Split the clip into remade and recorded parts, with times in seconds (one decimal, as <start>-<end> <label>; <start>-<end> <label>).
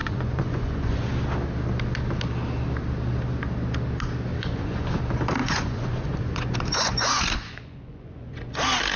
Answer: 0.0-1.1 remade; 1.1-4.3 recorded; 4.3-5.0 remade; 5.0-5.4 recorded; 5.4-8.5 remade; 8.5-9.0 recorded